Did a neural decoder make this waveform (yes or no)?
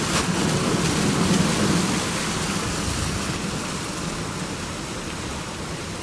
no